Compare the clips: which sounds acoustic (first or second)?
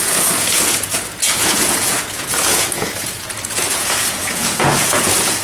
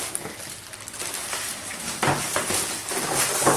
second